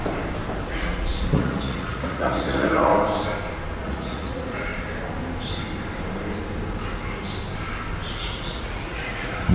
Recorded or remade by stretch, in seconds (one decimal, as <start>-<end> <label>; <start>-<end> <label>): 0.0-0.7 recorded; 0.7-2.9 remade; 2.9-3.8 recorded; 3.8-4.7 remade; 4.7-8.1 recorded; 8.1-9.5 remade